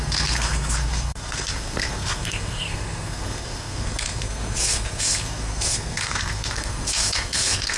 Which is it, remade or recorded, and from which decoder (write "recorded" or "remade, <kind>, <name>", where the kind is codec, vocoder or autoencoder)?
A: remade, codec, SNAC